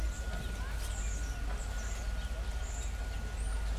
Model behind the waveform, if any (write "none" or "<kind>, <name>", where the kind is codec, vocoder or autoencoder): none